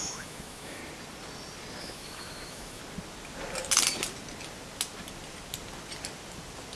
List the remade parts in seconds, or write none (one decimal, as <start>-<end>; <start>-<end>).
0.0-0.8; 1.8-2.8

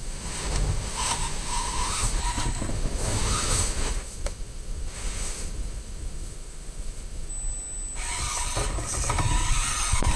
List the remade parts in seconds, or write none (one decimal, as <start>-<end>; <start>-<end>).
0.0-2.2; 2.7-7.3

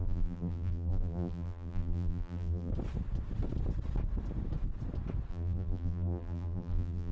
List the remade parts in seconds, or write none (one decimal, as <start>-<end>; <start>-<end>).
0.0-2.7; 5.3-7.1

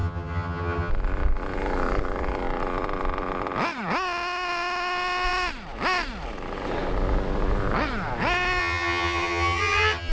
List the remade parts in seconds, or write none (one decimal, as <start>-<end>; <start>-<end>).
0.0-0.9; 8.6-10.1

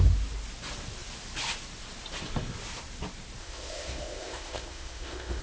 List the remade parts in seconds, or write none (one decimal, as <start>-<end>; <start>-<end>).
3.4-5.4

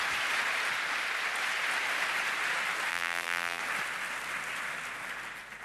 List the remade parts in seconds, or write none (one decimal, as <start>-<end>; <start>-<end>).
2.9-3.6